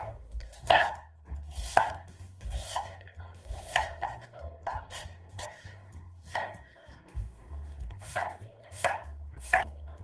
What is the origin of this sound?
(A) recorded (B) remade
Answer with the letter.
B